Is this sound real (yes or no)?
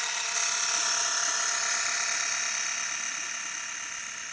yes